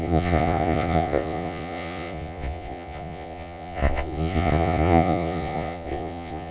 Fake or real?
fake